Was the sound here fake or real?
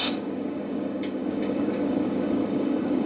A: fake